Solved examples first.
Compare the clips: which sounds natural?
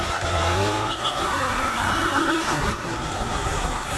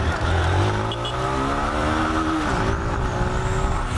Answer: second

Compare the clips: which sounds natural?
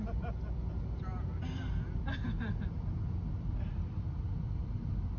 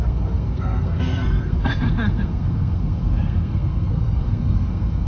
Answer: first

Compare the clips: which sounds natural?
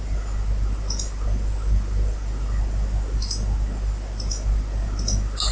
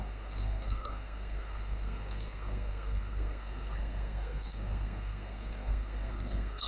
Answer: first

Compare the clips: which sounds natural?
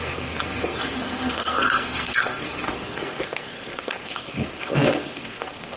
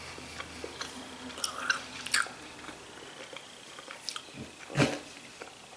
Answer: second